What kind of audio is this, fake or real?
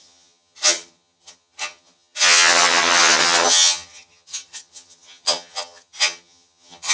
fake